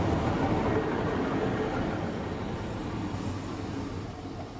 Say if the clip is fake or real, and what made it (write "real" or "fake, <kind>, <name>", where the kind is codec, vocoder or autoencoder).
real